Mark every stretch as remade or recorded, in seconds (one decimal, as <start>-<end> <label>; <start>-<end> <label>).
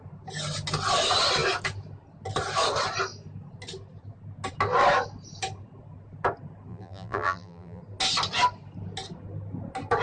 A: 0.0-6.7 recorded; 6.7-7.8 remade; 7.8-10.0 recorded